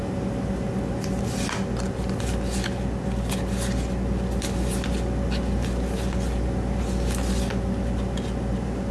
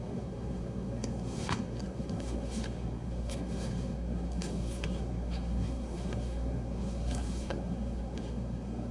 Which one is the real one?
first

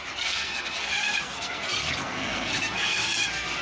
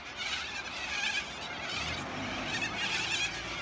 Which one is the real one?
second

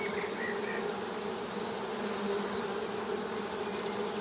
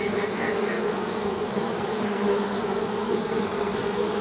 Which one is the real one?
first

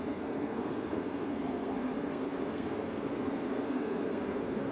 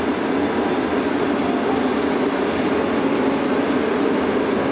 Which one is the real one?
second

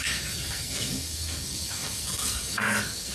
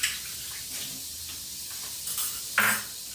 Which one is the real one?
second